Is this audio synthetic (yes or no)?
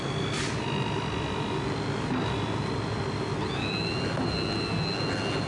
no